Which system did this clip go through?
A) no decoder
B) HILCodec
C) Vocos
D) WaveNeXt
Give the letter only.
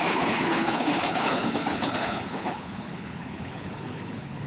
B